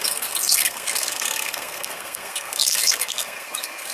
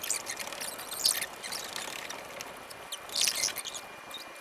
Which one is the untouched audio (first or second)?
second